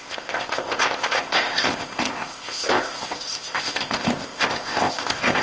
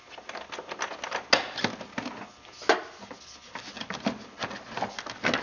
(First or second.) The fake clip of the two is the first